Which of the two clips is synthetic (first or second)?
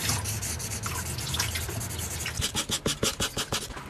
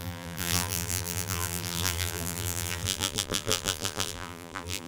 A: second